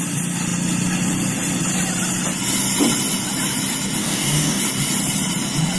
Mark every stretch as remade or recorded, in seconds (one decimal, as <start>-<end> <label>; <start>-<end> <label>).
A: 0.0-4.0 recorded; 4.0-4.6 remade; 4.6-5.8 recorded